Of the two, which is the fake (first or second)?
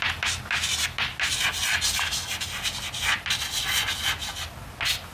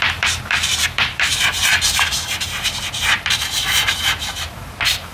second